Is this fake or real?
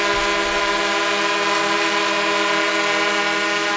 real